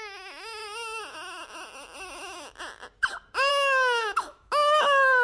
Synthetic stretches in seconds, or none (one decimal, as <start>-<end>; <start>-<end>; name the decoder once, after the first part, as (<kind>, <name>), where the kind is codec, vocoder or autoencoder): 0.0-0.6 (autoencoder, DAC-VAE); 3.5-5.2